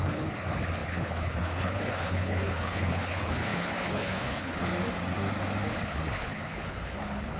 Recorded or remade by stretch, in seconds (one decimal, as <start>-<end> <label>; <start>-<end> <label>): 0.0-4.7 remade; 4.7-5.7 recorded; 5.7-7.4 remade